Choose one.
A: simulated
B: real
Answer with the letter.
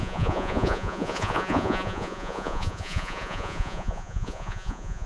A